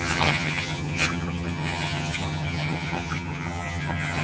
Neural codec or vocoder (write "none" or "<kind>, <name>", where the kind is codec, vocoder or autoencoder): vocoder, HiFi-GAN